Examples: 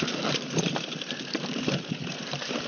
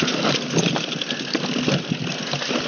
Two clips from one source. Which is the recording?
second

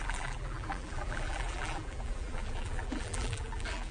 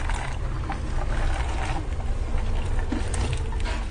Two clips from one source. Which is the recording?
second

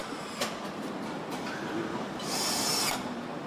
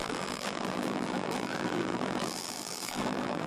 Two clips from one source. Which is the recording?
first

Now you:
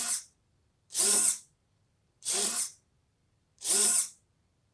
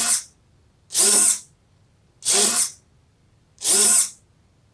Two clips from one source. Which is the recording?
second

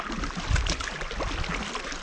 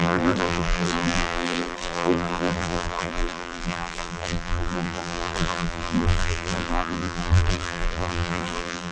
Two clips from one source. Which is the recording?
first